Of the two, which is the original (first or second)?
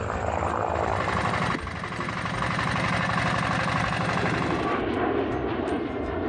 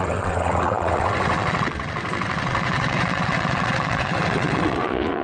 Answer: first